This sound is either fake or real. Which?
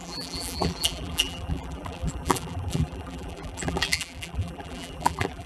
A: fake